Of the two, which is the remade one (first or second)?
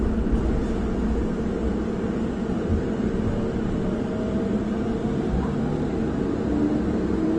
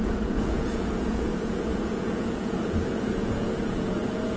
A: second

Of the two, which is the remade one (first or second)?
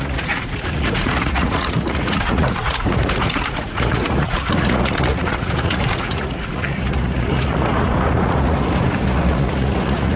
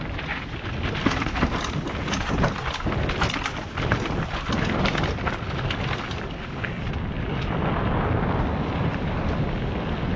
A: first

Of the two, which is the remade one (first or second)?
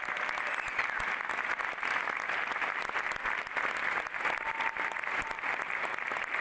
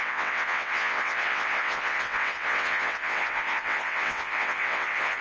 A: second